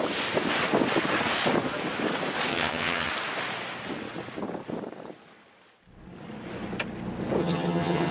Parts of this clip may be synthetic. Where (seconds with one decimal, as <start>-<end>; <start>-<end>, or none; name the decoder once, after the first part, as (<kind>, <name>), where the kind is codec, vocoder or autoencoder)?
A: 2.5-3.1 (vocoder, HiFi-GAN); 7.4-8.1